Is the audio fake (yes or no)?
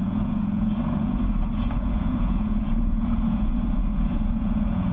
yes